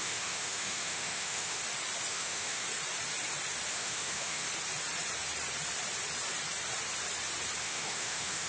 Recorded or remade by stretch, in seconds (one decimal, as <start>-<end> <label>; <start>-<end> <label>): 0.0-1.6 remade; 1.6-2.1 recorded; 2.1-2.6 remade; 2.6-3.7 recorded; 3.7-4.5 remade; 4.5-7.6 recorded; 7.6-8.5 remade